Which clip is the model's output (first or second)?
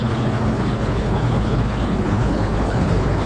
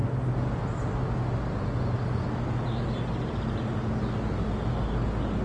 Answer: first